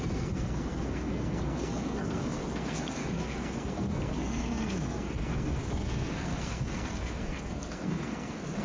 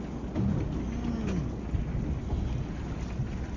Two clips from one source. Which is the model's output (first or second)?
first